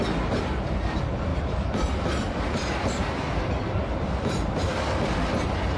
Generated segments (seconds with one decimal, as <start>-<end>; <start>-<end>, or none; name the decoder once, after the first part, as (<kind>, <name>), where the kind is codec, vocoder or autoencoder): 1.3-4.8 (vocoder, BigVGAN v2)

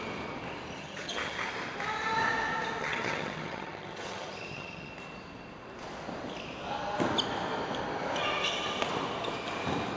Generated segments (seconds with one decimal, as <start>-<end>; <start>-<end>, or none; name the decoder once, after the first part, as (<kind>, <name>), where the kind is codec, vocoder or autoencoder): 0.8-1.5 (vocoder, HiFi-GAN); 2.8-4.9

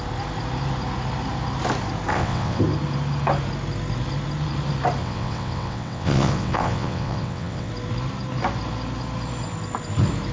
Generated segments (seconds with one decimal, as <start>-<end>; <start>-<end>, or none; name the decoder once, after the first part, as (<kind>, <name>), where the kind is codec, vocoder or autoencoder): 2.1-2.6 (vocoder, WaveNeXt); 5.0-7.7

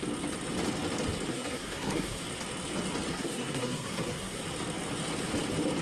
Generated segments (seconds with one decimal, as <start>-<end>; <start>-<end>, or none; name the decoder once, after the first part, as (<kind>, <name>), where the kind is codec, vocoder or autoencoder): 1.3-2.2 (codec, SNAC); 3.1-4.4

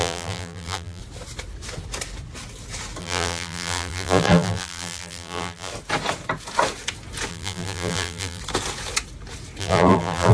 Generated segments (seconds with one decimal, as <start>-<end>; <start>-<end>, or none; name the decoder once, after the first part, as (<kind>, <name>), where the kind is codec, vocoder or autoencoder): 0.0-1.0 (vocoder, BigVGAN v2); 3.0-5.7; 7.3-8.4; 9.6-10.3

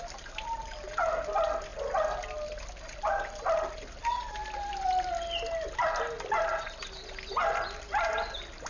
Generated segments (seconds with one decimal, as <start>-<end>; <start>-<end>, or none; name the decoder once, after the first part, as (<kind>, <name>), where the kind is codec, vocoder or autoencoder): none

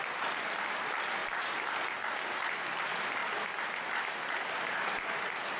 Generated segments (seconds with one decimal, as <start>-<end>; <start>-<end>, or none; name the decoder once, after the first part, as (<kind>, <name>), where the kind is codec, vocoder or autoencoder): 1.2-1.8 (vocoder, BigVGAN v2); 3.2-3.7

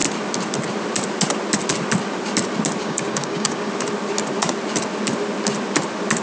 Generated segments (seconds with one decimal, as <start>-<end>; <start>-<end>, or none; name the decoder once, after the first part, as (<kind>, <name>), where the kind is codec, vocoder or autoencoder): 2.8-3.7 (codec, DAC)